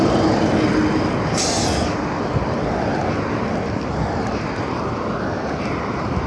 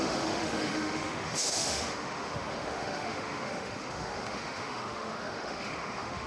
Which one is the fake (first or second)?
second